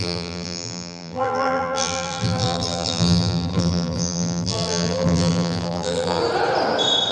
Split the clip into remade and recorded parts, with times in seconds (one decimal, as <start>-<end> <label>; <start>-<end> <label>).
0.0-6.2 remade; 6.2-7.1 recorded